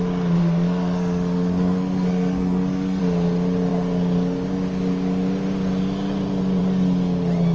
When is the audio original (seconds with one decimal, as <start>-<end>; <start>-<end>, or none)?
0.0-0.4; 3.0-7.5

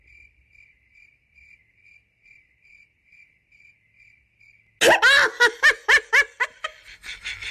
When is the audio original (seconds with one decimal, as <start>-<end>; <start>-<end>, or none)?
0.0-7.5

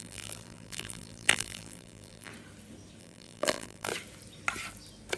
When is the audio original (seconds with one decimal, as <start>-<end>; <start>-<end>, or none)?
2.3-3.0; 3.9-5.2